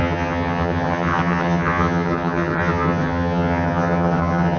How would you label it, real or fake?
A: fake